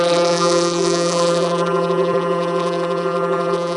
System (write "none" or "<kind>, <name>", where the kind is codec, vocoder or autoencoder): vocoder, BigVGAN v2